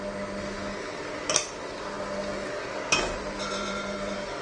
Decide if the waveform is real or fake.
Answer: real